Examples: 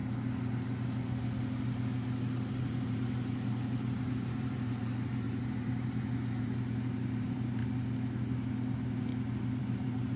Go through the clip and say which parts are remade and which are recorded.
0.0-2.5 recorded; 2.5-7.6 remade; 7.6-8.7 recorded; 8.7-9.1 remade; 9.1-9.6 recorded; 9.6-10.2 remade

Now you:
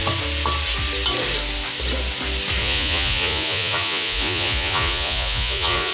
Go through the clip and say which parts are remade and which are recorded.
0.0-2.6 recorded; 2.6-5.9 remade

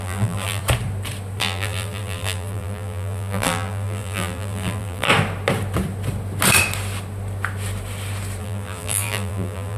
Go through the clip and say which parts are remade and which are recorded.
0.0-0.6 remade; 0.6-1.4 recorded; 1.4-5.1 remade; 5.1-8.4 recorded; 8.4-9.8 remade

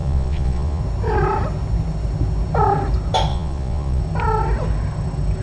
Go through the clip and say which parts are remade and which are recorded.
0.0-0.8 remade; 0.8-3.3 recorded; 3.3-4.0 remade; 4.0-5.4 recorded